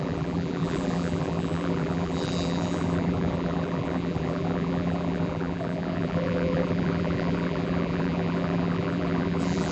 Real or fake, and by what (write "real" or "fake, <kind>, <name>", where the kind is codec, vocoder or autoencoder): fake, vocoder, BigVGAN v2